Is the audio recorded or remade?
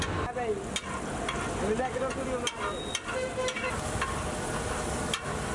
recorded